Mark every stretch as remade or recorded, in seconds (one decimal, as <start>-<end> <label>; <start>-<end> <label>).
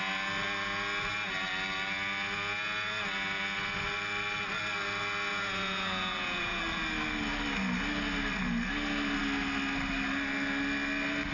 0.0-5.3 recorded; 5.3-6.6 remade; 6.6-11.3 recorded